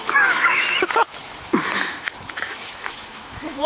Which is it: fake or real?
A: fake